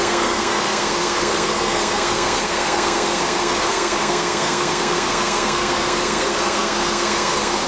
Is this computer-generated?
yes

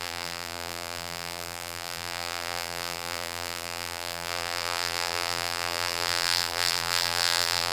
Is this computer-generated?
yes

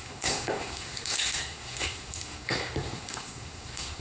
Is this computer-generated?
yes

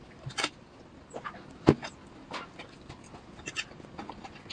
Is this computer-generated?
no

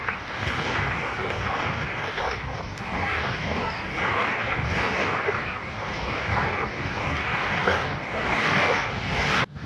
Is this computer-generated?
yes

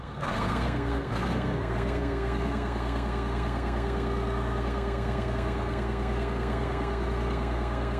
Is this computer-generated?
yes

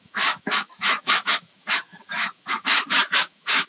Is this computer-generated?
yes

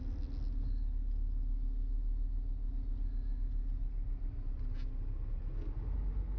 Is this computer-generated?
no